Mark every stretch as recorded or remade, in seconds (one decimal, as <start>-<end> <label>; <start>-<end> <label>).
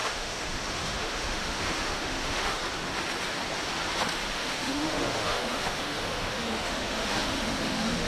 0.0-2.6 remade; 2.6-4.3 recorded; 4.3-8.1 remade